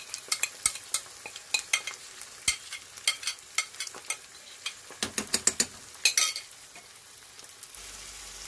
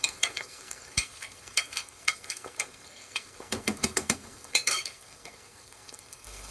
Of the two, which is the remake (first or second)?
second